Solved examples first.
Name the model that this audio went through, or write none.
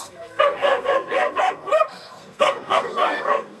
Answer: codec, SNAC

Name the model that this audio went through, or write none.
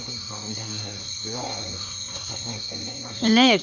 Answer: codec, SNAC